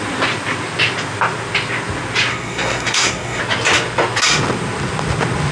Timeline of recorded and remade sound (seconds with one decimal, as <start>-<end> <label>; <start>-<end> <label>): 0.0-2.3 recorded; 2.3-3.4 remade; 3.4-5.5 recorded